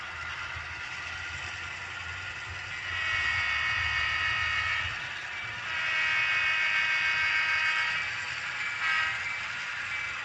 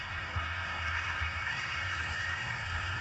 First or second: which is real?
first